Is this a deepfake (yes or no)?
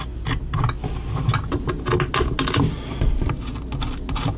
no